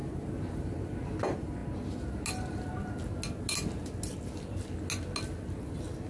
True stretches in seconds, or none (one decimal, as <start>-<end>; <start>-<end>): 0.0-6.1